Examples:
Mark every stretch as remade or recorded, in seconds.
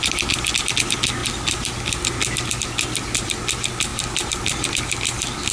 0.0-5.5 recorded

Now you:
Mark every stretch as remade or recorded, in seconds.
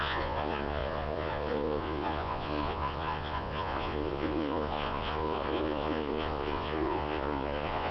0.0-7.9 remade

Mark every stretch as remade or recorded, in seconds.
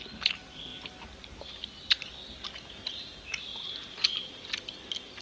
0.0-5.2 recorded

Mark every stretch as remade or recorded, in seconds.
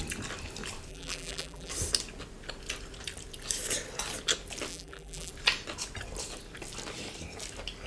0.0-0.9 recorded; 0.9-1.7 remade; 1.7-4.7 recorded; 4.7-5.3 remade; 5.3-7.9 recorded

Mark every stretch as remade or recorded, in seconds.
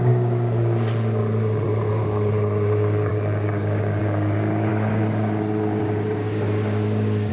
0.0-1.2 remade; 1.2-1.9 recorded; 1.9-7.3 remade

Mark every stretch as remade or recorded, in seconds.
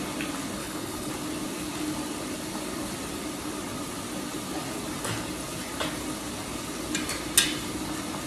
0.0-0.6 recorded; 0.6-1.1 remade; 1.1-8.3 recorded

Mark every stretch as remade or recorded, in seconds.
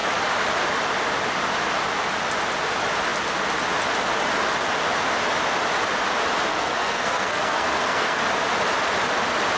0.0-6.5 recorded; 6.5-8.2 remade; 8.2-9.6 recorded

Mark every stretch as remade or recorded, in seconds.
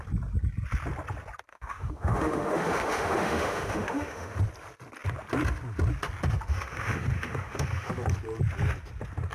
0.0-1.5 recorded; 1.5-4.4 remade; 4.4-6.5 recorded; 6.5-7.9 remade; 7.9-9.3 recorded